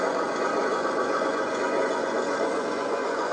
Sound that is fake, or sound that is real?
fake